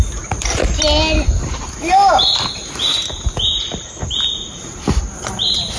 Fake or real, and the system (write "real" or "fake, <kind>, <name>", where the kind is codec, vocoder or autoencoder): real